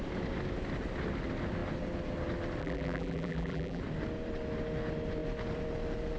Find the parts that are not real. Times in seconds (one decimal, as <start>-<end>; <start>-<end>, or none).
2.6-3.8